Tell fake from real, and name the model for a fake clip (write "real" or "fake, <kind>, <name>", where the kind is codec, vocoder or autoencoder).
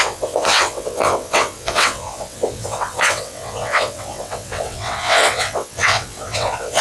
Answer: fake, vocoder, WaveNeXt